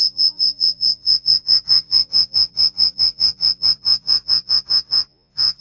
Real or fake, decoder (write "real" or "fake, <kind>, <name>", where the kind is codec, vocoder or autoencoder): fake, vocoder, Vocos